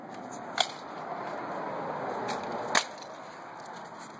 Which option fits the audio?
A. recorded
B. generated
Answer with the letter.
A